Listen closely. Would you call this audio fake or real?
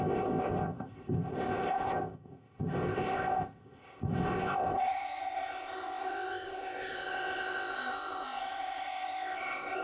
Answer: fake